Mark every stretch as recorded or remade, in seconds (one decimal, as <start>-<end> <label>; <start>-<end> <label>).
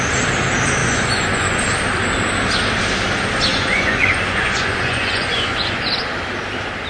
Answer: 0.0-0.8 recorded; 0.8-1.6 remade; 1.6-3.5 recorded; 3.5-5.8 remade; 5.8-6.9 recorded